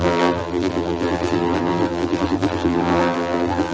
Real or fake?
fake